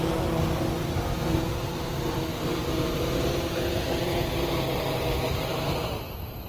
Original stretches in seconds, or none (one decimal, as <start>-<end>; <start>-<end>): 0.0-2.3; 4.0-5.5

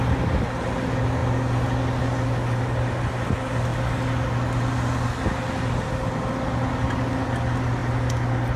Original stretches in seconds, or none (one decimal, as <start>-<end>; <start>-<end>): 0.0-8.6

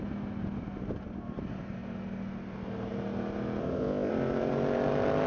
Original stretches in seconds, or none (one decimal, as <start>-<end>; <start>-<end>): 0.0-3.6; 4.1-5.3